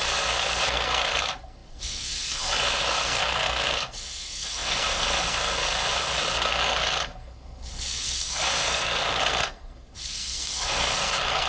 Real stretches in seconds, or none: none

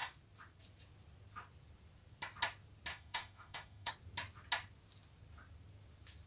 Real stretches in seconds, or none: 0.0-2.9; 3.9-6.3

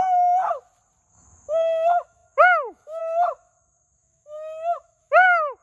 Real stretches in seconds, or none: 0.4-1.1

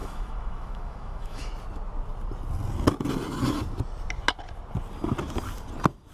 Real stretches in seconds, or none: 1.5-6.1